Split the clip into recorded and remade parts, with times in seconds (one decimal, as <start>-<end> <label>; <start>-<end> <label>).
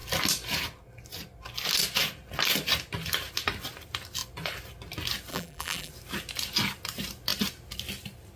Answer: 0.0-5.3 recorded; 5.3-5.9 remade; 5.9-8.4 recorded